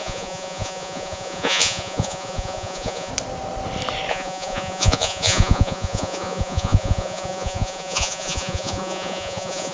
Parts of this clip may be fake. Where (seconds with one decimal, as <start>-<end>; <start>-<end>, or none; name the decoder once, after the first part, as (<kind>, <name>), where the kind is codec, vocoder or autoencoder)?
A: 0.0-3.1 (vocoder, Vocos); 4.1-9.7